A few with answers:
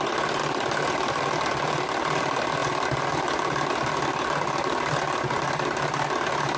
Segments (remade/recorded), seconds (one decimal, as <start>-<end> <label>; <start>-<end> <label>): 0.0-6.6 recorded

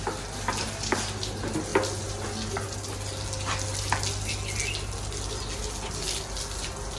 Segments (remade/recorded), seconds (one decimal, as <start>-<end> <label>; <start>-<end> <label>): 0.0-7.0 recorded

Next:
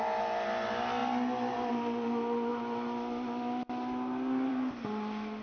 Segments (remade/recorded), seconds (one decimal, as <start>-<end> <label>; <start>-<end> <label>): 0.0-5.4 recorded

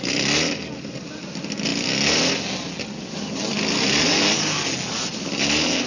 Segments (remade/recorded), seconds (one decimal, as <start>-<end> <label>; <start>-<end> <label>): 0.0-5.9 recorded

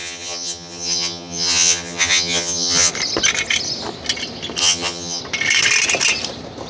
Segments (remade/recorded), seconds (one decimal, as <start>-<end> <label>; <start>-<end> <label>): 0.0-2.9 remade; 2.9-4.6 recorded; 4.6-5.2 remade; 5.2-6.7 recorded